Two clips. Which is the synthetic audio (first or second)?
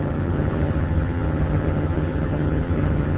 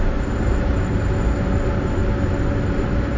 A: first